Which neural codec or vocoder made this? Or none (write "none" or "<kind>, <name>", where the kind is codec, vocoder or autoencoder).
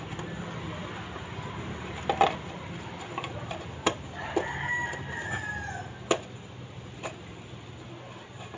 none